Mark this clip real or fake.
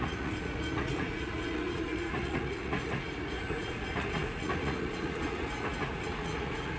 fake